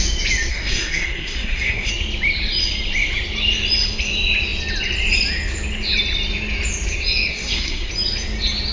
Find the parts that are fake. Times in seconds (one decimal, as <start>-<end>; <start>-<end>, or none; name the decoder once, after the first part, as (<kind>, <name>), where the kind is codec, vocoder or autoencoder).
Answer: 0.5-1.9 (codec, SNAC); 7.3-7.9

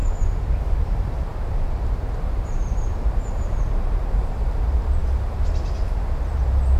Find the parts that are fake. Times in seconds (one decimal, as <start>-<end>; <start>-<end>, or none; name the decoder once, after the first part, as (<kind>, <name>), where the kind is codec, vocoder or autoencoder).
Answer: 0.6-5.0 (vocoder, BigVGAN v2)

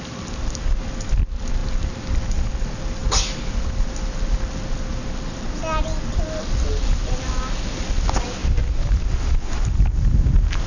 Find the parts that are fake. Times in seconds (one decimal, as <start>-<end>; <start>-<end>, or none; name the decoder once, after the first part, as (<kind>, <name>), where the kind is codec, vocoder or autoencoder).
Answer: none

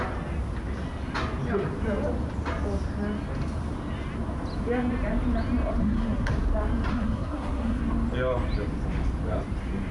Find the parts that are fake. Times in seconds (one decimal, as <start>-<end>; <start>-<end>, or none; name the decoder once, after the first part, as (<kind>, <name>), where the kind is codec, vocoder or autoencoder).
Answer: 5.8-6.3 (codec, SNAC); 6.9-7.8